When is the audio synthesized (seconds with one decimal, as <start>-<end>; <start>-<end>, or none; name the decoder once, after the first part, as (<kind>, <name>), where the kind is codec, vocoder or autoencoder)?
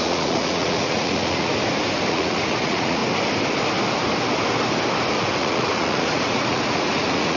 0.0-1.5 (vocoder, Vocos); 2.1-3.0; 5.1-7.4